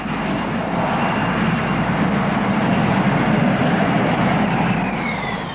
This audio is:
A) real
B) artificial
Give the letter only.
A